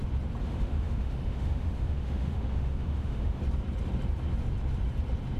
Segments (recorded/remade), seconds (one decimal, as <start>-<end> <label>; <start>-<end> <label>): 0.0-0.4 recorded; 0.4-3.4 remade; 3.4-5.4 recorded